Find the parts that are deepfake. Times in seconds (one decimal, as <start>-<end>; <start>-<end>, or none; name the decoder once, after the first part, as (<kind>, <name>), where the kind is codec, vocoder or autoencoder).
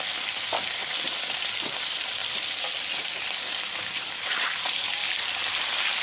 0.0-5.0 (vocoder, BigVGAN v2)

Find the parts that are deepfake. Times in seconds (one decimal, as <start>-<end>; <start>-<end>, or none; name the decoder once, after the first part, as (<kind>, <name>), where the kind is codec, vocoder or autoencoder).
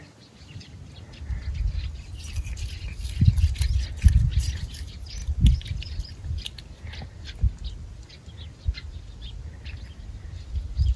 none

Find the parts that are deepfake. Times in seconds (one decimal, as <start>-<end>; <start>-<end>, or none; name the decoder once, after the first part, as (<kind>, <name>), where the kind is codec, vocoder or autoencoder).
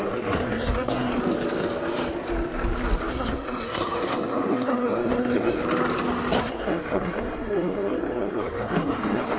0.0-1.1 (codec, SNAC); 3.1-5.6; 6.4-9.4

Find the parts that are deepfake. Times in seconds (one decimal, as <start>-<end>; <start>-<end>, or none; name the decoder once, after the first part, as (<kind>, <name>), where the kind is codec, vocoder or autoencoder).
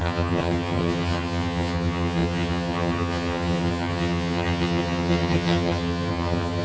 0.0-6.6 (vocoder, HiFi-GAN)